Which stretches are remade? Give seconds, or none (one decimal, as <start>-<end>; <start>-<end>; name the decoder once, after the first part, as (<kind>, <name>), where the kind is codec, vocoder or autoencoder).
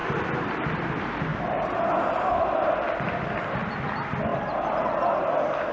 0.0-0.5 (vocoder, BigVGAN v2); 1.3-1.8; 4.3-4.9